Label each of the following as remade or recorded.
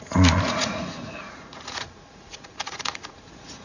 remade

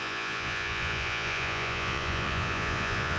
remade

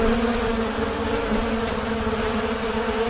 recorded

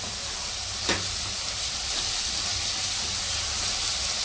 recorded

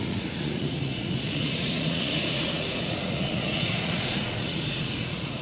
remade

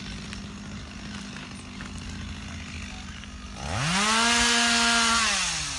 recorded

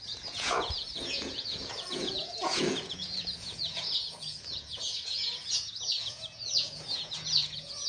remade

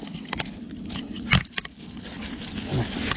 recorded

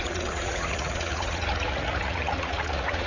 remade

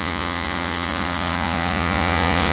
remade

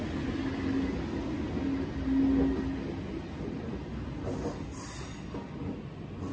recorded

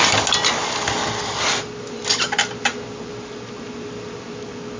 recorded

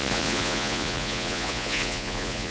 remade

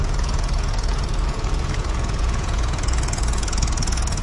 remade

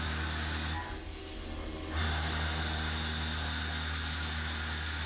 recorded